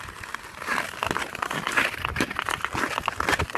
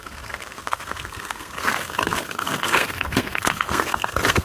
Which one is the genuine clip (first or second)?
first